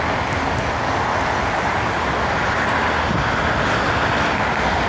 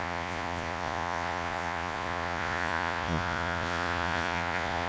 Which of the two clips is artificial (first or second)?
second